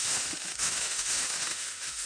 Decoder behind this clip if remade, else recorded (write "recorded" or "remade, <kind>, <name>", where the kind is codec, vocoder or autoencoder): remade, autoencoder, DAC-VAE